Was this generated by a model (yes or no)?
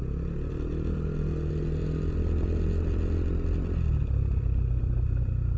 no